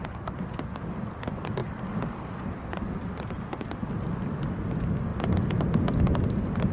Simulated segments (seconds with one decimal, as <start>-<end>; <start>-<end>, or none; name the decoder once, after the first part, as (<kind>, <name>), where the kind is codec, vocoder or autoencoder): none